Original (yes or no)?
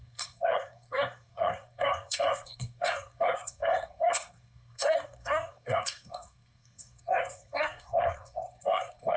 no